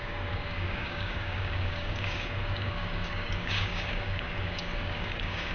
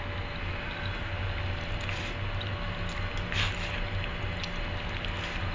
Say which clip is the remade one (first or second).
first